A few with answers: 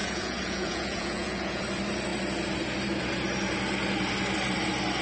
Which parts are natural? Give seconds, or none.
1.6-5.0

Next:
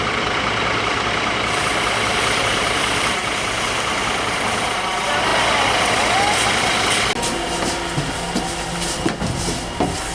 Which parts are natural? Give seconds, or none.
0.0-10.1

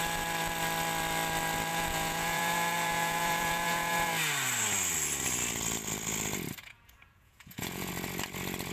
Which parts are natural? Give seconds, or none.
0.0-1.7; 4.1-6.6; 7.9-8.7

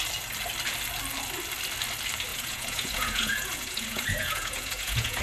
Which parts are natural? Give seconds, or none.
0.0-2.3

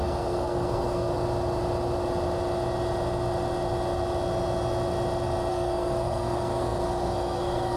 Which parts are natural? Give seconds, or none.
1.1-5.5

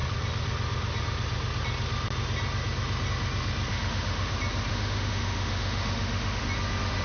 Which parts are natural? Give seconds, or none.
0.0-3.7; 4.3-4.7; 6.4-7.0